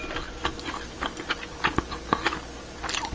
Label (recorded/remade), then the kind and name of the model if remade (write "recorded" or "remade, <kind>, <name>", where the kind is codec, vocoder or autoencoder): recorded